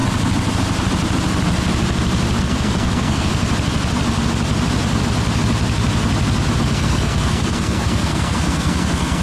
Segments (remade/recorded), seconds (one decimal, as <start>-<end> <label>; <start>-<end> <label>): 0.0-2.4 recorded; 2.4-3.3 remade; 3.3-6.7 recorded; 6.7-9.2 remade